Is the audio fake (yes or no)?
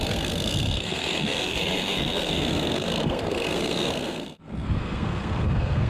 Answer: yes